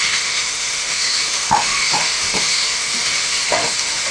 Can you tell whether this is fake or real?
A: fake